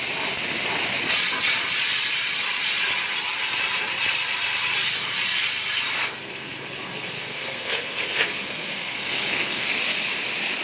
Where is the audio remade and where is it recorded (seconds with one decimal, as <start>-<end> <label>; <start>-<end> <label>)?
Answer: 0.0-6.0 recorded; 6.0-9.8 remade; 9.8-10.6 recorded